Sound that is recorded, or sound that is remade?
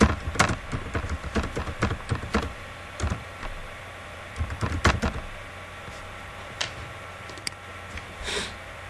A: remade